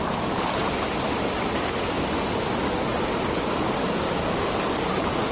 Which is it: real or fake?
real